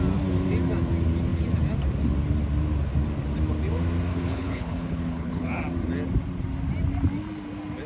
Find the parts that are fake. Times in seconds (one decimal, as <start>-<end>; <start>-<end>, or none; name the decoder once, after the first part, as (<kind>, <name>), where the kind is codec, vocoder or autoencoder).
4.1-5.6 (codec, HILCodec)